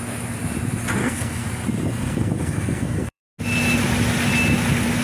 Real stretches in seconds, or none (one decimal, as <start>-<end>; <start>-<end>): 0.0-1.0; 3.2-5.0